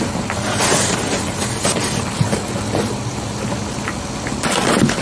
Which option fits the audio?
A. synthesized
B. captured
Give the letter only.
B